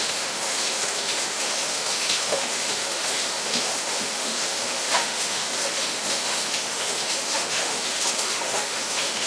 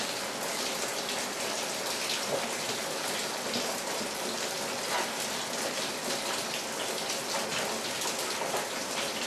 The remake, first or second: first